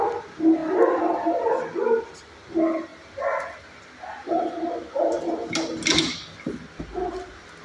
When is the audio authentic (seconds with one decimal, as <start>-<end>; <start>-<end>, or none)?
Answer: 0.0-7.6